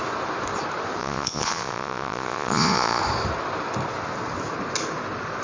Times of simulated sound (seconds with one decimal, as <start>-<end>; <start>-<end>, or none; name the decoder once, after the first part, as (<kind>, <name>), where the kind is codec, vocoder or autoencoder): 1.0-3.0 (vocoder, Vocos)

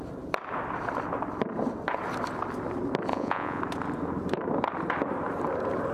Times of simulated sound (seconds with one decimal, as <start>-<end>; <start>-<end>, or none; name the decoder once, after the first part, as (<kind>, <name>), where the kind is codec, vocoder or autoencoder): 3.1-3.6 (vocoder, Vocos)

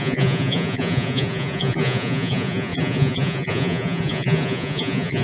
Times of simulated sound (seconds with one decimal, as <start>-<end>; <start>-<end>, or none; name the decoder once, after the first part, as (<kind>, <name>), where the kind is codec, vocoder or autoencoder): 0.0-5.2 (vocoder, Vocos)

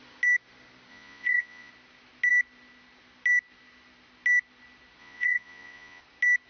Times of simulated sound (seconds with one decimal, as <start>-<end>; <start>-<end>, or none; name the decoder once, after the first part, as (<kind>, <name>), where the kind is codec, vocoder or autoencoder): 0.9-1.7 (vocoder, Vocos); 5.0-6.0

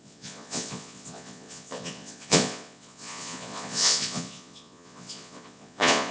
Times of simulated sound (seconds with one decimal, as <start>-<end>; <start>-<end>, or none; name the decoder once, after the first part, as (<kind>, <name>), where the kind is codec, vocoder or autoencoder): 0.0-6.1 (vocoder, Vocos)

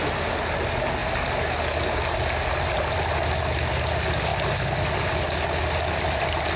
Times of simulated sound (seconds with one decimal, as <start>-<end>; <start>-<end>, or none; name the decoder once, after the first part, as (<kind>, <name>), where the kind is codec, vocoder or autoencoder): none

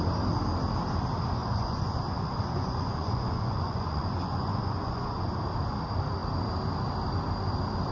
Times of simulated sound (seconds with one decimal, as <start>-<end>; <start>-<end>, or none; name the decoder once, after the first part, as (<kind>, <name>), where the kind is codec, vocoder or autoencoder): 1.4-5.3 (vocoder, Vocos)

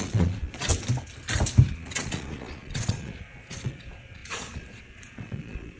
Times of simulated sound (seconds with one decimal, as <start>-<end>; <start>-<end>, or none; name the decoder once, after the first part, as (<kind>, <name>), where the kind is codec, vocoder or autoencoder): 0.0-0.7 (vocoder, Vocos); 1.7-5.8